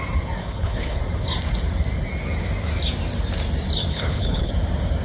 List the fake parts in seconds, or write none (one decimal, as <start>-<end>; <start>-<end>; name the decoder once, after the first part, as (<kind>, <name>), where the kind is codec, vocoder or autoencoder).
0.4-1.0 (codec, HILCodec); 3.9-4.5